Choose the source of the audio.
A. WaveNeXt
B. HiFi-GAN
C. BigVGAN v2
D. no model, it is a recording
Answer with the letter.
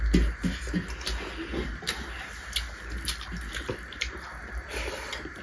D